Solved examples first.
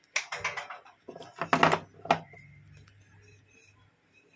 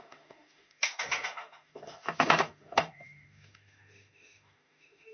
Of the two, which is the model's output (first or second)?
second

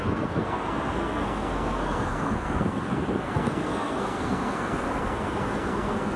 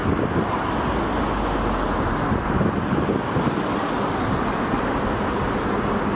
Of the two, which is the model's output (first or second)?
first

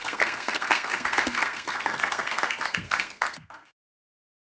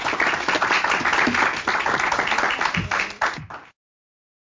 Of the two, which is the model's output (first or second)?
first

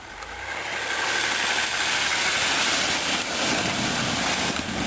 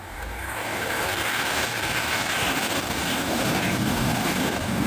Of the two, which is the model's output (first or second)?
second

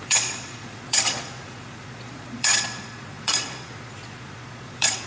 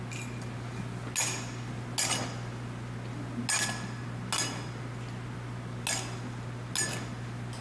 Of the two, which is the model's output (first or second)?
first